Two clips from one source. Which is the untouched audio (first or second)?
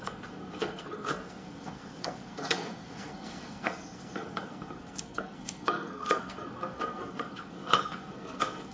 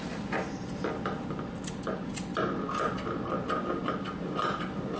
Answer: second